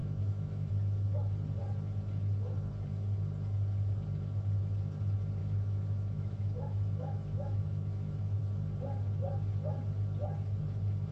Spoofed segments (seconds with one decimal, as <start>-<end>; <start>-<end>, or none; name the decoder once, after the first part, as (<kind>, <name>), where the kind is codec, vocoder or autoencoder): 0.0-0.7 (autoencoder, DAC-VAE); 5.4-8.4